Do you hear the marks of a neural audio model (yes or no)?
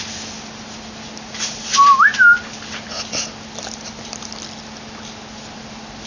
no